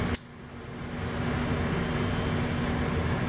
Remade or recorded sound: recorded